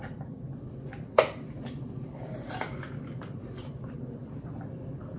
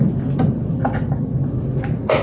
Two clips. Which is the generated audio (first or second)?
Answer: first